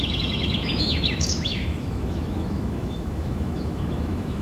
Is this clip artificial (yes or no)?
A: yes